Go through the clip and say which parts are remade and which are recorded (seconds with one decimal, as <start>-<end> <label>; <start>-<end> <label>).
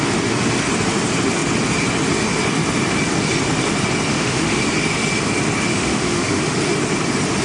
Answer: 0.0-4.1 recorded; 4.1-4.6 remade; 4.6-5.7 recorded; 5.7-6.4 remade; 6.4-7.4 recorded